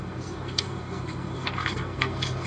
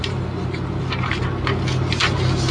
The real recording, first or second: second